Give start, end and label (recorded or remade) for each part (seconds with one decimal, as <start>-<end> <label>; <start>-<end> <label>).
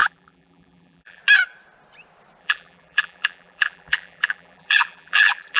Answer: 0.0-1.2 remade; 1.2-2.4 recorded; 2.4-5.6 remade